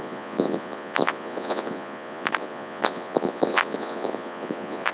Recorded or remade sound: remade